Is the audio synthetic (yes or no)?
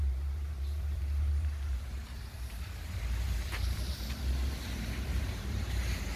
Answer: yes